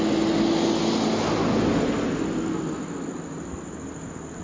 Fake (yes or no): no